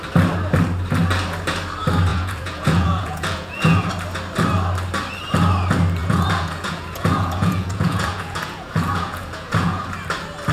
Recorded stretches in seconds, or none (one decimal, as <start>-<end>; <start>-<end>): 0.0-2.1; 3.9-6.0; 9.9-10.5